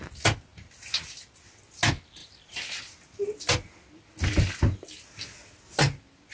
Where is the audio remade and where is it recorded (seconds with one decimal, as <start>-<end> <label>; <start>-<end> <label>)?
0.0-6.3 recorded

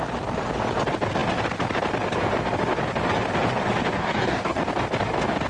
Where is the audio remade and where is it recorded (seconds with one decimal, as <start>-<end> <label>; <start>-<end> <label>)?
0.0-4.0 recorded; 4.0-4.6 remade; 4.6-5.5 recorded

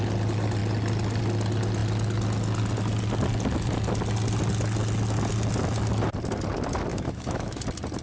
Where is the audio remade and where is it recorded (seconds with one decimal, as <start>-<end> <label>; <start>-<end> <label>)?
0.0-6.9 recorded; 6.9-7.6 remade; 7.6-8.0 recorded

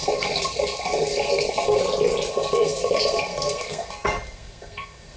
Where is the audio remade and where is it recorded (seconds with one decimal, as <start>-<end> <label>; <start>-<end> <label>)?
0.0-1.8 remade; 1.8-2.3 recorded; 2.3-5.2 remade

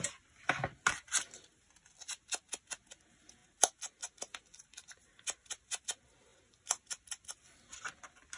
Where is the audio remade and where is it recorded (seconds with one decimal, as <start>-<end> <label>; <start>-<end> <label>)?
0.0-8.4 recorded

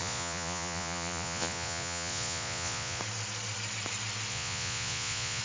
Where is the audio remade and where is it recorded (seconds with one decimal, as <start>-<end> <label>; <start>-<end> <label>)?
0.0-3.0 remade; 3.0-4.3 recorded; 4.3-5.4 remade

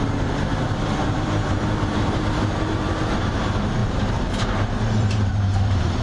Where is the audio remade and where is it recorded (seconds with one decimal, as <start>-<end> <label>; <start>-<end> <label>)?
0.0-6.0 remade